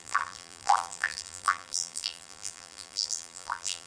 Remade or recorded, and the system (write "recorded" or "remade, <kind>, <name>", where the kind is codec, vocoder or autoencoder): remade, vocoder, BigVGAN v2